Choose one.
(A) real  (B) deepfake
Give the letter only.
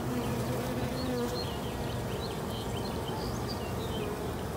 A